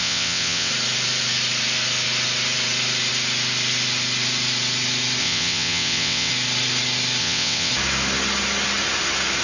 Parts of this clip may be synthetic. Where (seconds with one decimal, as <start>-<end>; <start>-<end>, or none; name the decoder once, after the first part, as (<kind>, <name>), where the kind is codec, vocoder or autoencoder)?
0.0-0.7 (vocoder, WaveNeXt); 5.2-6.3; 7.2-7.7